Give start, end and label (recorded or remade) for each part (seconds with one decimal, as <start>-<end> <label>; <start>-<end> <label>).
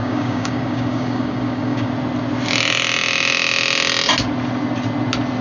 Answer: 0.0-1.9 remade; 1.9-5.4 recorded